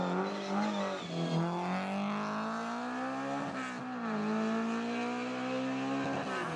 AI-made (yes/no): no